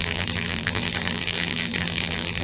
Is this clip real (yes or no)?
no